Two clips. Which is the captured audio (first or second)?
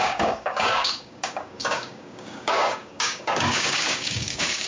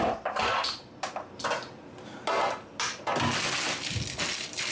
second